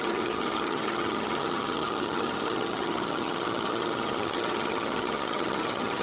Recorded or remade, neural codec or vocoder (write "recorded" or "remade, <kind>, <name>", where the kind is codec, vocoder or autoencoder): remade, vocoder, HiFi-GAN